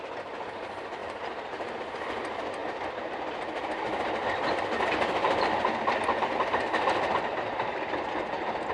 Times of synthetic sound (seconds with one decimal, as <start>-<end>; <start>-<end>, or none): 1.0-1.8